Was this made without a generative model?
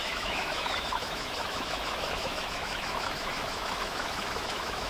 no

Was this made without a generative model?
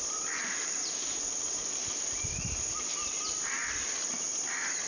yes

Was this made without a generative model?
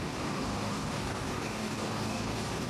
no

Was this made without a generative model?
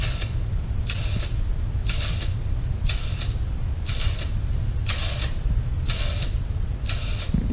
no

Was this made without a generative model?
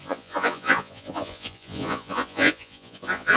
no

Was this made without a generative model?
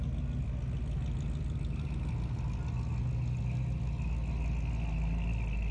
yes